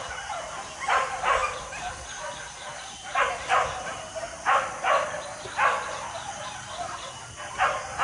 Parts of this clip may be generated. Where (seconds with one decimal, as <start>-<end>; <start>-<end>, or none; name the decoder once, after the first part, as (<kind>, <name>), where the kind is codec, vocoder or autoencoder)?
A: none